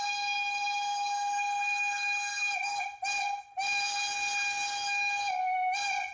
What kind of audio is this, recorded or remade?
recorded